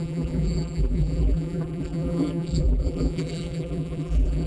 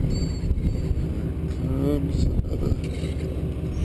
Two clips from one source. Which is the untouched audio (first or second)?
second